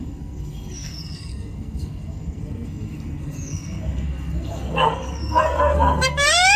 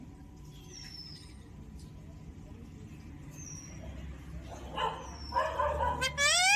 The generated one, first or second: first